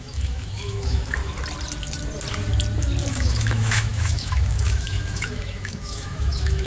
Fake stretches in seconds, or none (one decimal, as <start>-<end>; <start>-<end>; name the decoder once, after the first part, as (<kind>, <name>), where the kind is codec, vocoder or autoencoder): 0.0-1.2 (autoencoder, DAC-VAE); 3.1-6.7